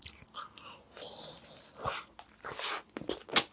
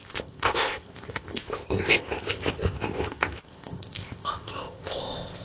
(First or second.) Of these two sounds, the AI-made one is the second